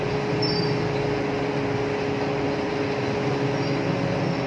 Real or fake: real